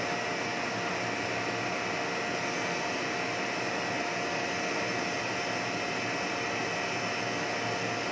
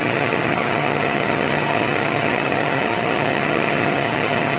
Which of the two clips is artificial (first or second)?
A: second